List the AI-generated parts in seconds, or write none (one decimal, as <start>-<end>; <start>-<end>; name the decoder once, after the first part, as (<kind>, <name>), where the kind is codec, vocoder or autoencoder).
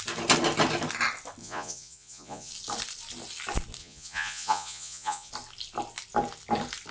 1.4-2.5 (vocoder, Vocos); 3.8-5.3